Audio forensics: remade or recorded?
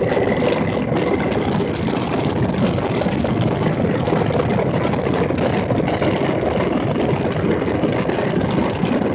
recorded